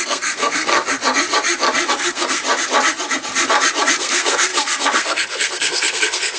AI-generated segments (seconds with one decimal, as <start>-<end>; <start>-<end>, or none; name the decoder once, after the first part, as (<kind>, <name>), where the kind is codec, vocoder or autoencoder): 0.0-0.7 (codec, SNAC); 1.9-2.4; 4.0-6.4